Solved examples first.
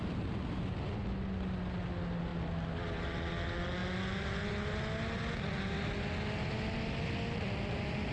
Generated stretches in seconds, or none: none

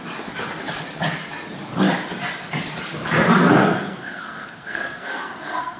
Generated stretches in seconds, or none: 3.6-5.8 (codec, SNAC)

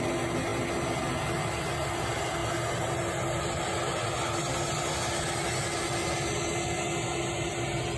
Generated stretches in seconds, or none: none

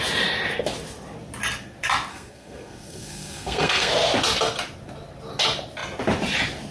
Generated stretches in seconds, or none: 2.1-3.9 (codec, SNAC)

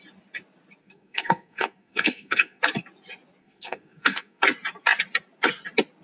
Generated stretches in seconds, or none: 0.8-2.6 (codec, SNAC); 3.4-4.4